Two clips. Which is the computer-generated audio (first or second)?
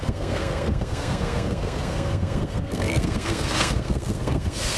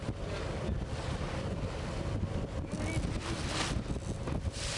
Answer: first